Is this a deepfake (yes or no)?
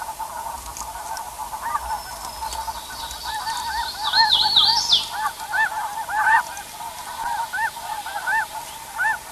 no